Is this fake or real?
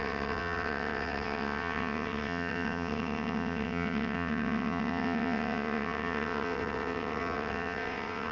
fake